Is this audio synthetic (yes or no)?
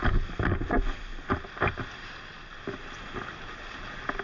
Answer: no